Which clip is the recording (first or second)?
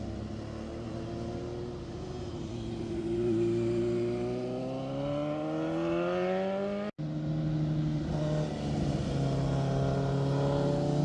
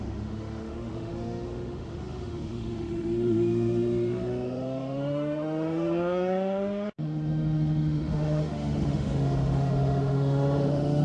first